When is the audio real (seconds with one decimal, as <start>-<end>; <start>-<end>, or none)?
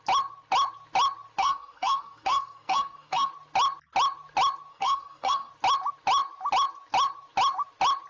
0.0-1.4; 3.3-4.7; 5.5-8.1